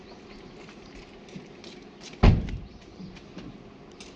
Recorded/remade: recorded